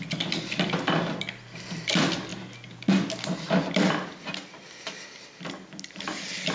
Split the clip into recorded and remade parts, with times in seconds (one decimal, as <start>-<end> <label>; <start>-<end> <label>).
0.0-6.5 recorded